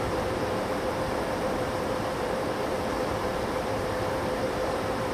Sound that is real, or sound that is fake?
fake